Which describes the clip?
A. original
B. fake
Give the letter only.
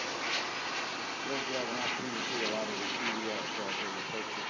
A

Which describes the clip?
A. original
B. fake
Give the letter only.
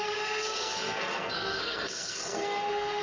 B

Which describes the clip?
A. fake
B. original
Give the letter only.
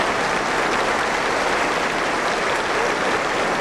B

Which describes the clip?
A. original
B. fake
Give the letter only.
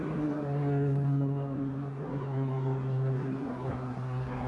B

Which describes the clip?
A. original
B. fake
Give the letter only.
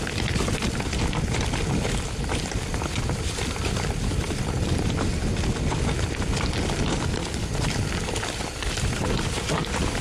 A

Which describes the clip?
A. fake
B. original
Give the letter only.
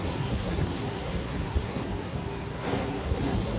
A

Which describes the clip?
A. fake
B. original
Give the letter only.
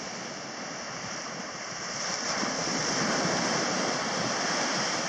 B